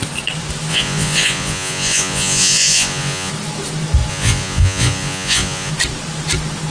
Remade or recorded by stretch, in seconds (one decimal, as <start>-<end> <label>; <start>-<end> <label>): 0.0-0.7 recorded; 0.7-3.3 remade; 3.3-4.1 recorded; 4.1-5.7 remade; 5.7-6.7 recorded